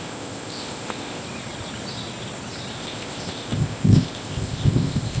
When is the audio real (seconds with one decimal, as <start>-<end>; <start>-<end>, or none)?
1.2-2.8